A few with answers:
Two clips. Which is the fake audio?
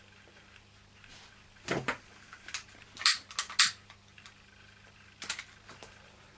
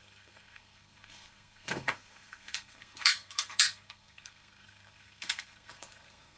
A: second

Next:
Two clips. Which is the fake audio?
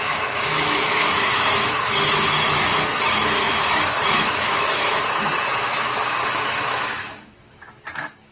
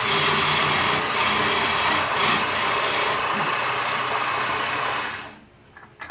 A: first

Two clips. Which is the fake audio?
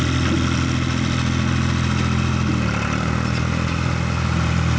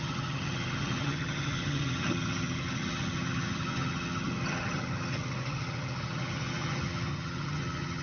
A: second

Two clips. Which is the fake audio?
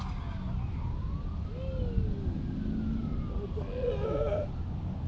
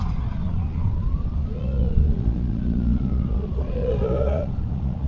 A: second